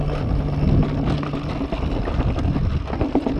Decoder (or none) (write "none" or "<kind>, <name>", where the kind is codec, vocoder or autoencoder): none